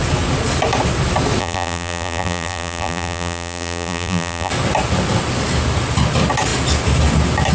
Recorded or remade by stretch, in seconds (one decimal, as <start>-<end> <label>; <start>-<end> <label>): 0.0-1.4 recorded; 1.4-4.5 remade; 4.5-7.5 recorded